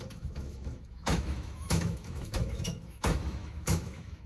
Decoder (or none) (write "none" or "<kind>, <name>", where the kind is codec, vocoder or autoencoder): autoencoder, DAC-VAE